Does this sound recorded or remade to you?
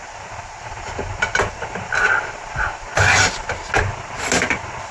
recorded